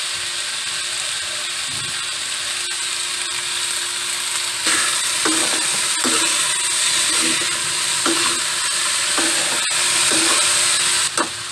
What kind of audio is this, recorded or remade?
recorded